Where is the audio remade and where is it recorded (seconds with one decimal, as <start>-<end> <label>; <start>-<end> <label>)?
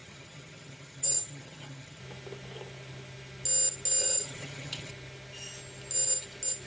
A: 0.0-2.0 remade; 2.0-4.0 recorded; 4.0-4.9 remade; 4.9-6.7 recorded